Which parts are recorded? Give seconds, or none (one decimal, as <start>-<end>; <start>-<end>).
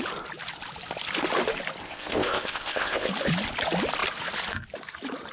0.0-1.8; 3.1-5.3